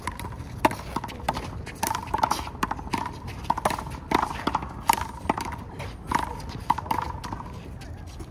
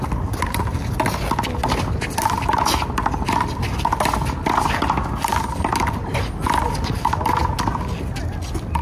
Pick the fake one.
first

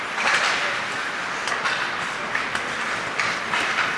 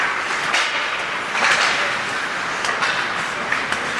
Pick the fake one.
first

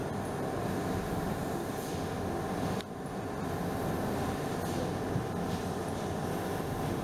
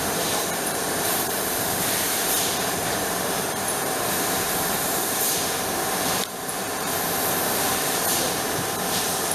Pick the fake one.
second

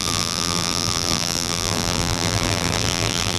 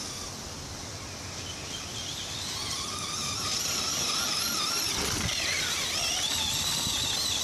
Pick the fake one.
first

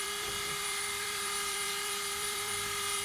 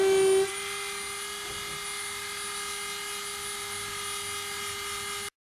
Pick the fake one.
first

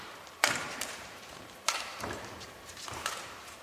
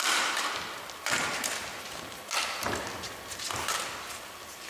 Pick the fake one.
first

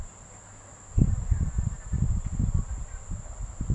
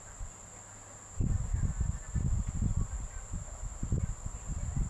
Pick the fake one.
first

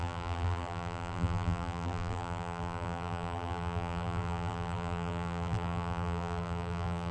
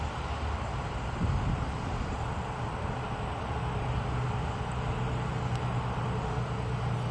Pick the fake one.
first